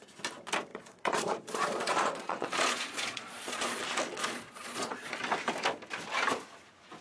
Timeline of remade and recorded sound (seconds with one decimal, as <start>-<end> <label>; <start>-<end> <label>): 0.0-0.7 recorded; 0.7-3.8 remade; 3.8-4.2 recorded; 4.2-5.2 remade; 5.2-7.0 recorded